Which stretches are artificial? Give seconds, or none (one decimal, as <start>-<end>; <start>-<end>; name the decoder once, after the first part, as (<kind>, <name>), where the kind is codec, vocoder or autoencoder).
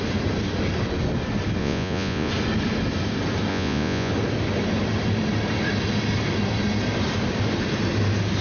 1.6-2.3 (vocoder, Vocos); 3.5-4.1